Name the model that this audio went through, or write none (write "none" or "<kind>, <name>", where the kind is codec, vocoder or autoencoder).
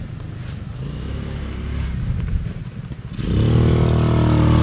none